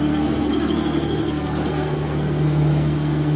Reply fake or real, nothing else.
fake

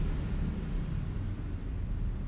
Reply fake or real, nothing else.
real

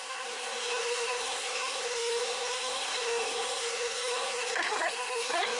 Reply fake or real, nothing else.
fake